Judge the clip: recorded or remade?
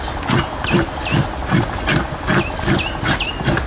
recorded